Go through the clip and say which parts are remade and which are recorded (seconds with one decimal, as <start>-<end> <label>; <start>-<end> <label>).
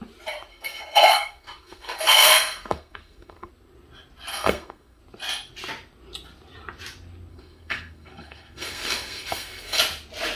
0.0-0.5 recorded; 0.5-3.5 remade; 3.5-4.3 recorded; 4.3-5.0 remade; 5.0-7.3 recorded; 7.3-9.8 remade; 9.8-10.4 recorded